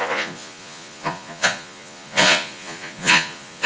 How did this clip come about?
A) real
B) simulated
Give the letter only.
B